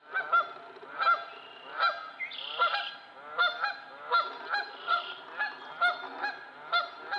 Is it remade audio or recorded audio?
recorded